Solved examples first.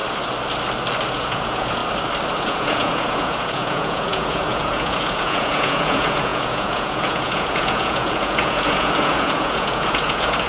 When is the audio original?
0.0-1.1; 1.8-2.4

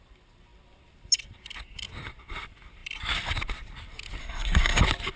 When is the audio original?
0.0-4.2; 4.8-5.2

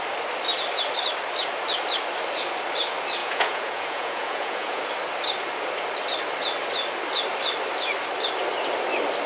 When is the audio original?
0.0-3.2; 4.8-9.3